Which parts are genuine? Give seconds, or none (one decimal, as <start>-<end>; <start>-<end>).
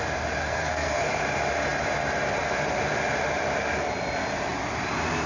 0.0-0.4; 1.1-5.3